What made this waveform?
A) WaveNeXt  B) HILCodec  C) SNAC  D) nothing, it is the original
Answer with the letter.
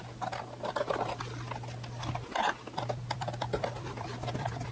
D